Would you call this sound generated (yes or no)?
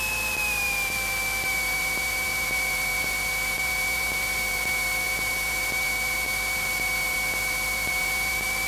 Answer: yes